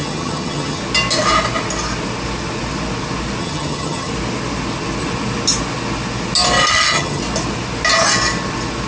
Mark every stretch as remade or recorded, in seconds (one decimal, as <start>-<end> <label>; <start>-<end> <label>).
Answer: 0.0-0.8 remade; 0.8-3.4 recorded; 3.4-4.1 remade; 4.1-6.7 recorded; 6.7-7.2 remade; 7.2-8.9 recorded